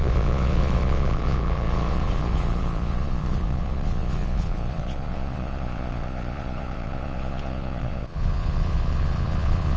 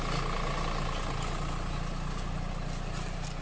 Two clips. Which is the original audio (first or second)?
second